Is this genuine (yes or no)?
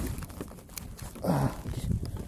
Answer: yes